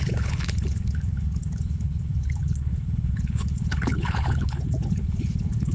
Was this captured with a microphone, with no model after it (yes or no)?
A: no